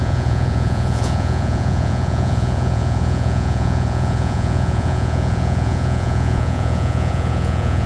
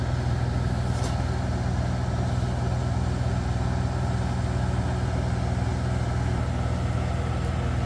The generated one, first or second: first